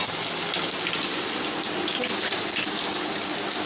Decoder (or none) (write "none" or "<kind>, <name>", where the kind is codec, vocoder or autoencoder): none